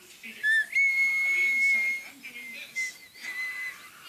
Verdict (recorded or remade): recorded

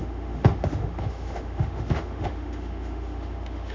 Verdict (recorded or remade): remade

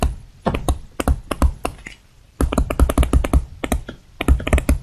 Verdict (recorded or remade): recorded